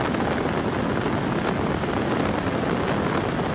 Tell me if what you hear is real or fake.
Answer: real